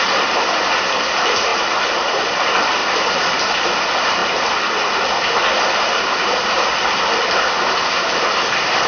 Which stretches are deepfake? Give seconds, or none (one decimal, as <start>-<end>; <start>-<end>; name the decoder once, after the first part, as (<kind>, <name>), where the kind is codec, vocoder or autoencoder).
none